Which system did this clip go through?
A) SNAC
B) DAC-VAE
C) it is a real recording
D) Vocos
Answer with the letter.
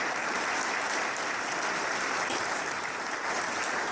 C